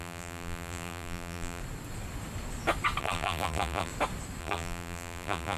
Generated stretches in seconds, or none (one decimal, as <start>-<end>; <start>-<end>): 0.0-1.6; 3.0-3.9; 4.4-5.6